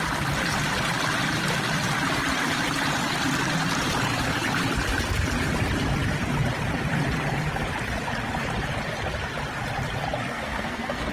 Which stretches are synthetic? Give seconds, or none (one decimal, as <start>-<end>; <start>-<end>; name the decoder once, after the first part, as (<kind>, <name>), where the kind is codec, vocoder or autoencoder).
10.3-11.1 (codec, SNAC)